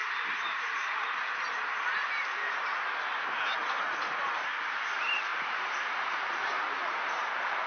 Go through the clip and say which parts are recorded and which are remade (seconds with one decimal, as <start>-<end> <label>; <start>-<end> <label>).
0.0-1.8 recorded; 1.8-3.6 remade; 3.6-4.1 recorded; 4.1-7.7 remade